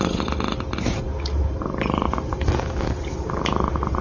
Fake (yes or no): no